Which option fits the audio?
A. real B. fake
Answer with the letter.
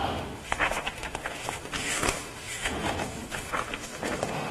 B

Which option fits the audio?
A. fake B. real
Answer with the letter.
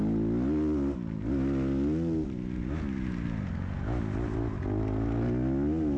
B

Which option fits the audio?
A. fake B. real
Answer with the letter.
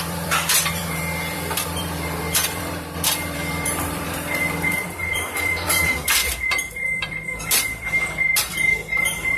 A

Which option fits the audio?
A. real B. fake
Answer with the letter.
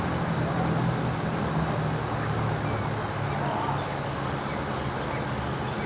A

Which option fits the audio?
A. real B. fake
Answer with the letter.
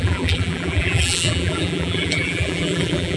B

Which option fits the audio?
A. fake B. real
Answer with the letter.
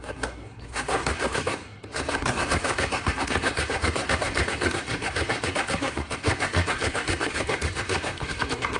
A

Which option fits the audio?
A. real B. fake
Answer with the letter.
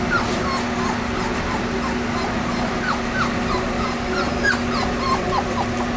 A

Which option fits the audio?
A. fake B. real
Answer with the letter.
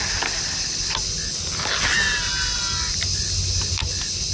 B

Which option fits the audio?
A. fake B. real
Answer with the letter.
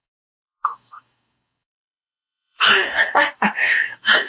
A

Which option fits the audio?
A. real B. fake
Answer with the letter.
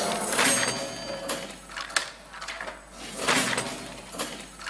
A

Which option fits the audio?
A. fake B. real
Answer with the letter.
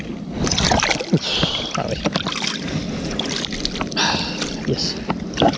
B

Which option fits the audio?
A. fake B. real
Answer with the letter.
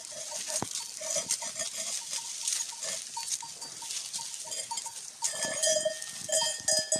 B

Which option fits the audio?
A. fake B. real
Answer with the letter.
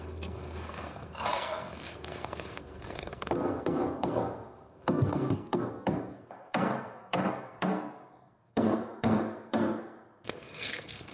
A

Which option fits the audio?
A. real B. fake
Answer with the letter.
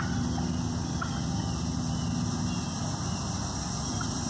A